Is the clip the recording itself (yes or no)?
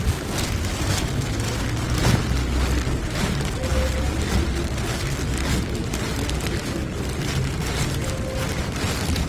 yes